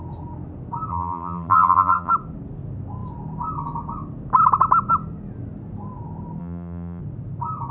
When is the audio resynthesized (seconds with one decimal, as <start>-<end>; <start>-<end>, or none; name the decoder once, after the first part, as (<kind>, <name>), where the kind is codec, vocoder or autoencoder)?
0.9-2.1 (vocoder, BigVGAN v2); 6.4-7.0